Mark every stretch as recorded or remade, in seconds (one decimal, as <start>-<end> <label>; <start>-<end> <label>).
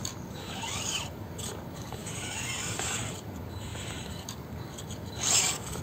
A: 0.0-5.8 remade